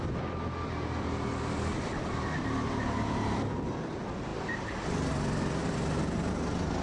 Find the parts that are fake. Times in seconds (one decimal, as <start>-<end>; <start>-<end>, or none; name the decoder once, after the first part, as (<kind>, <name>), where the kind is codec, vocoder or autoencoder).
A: 5.6-6.3 (vocoder, BigVGAN v2)